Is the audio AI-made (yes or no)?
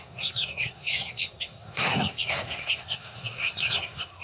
yes